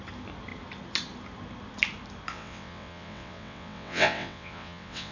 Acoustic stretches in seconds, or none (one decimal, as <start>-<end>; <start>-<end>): 0.0-2.3